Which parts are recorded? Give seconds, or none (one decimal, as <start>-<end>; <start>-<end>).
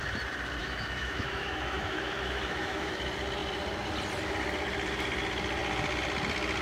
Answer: 0.0-0.6; 2.9-6.6